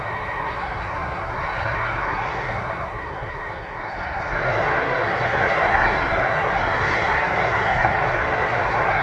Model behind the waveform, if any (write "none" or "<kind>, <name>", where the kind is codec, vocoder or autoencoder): codec, SNAC